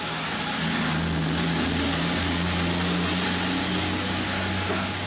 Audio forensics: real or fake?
real